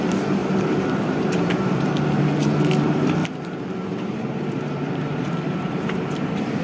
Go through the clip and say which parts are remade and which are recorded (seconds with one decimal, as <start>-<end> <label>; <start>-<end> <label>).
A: 0.0-0.4 recorded; 0.4-1.5 remade; 1.5-3.2 recorded; 3.2-6.1 remade; 6.1-6.6 recorded